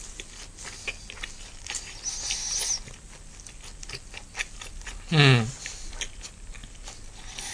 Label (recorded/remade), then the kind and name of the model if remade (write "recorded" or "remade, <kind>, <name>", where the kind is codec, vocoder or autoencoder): recorded